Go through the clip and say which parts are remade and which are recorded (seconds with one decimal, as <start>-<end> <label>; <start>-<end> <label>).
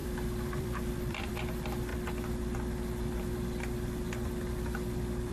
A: 0.0-1.9 remade; 1.9-5.3 recorded